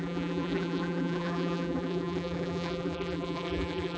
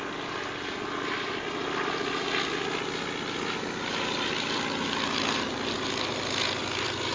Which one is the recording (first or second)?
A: second